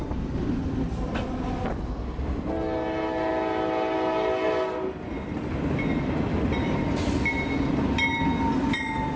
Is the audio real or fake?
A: real